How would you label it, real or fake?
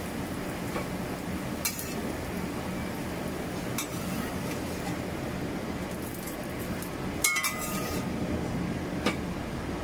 real